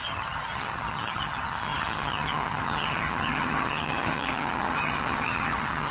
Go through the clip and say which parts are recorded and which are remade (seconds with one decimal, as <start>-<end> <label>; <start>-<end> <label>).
0.0-5.9 remade